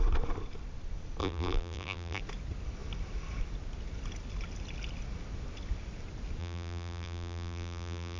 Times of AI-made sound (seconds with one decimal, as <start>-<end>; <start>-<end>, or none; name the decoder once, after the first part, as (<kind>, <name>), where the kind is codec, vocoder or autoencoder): 1.2-2.2 (vocoder, BigVGAN v2); 6.4-8.2